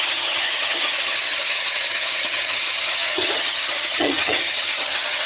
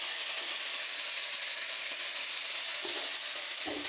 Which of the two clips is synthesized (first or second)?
first